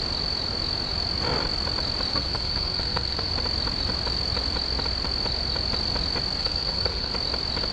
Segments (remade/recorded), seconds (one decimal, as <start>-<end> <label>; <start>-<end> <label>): 0.0-2.1 recorded; 2.1-3.3 remade; 3.3-6.4 recorded; 6.4-7.1 remade; 7.1-7.7 recorded